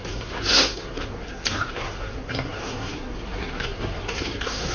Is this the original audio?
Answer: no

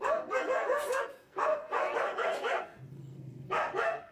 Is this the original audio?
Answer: no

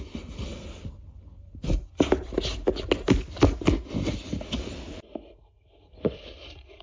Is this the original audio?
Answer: yes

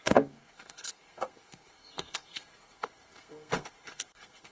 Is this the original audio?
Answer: no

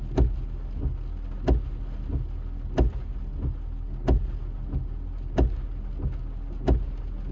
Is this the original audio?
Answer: yes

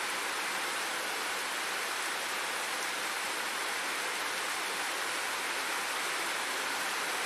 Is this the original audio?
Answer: yes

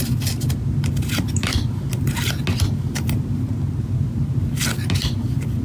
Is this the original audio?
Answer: yes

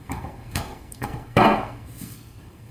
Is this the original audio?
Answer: no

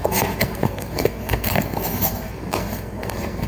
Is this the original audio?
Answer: no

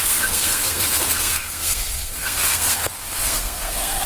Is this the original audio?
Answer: no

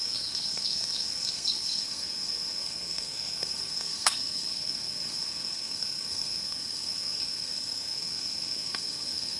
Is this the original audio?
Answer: no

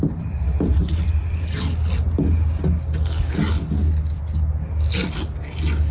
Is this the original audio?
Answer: yes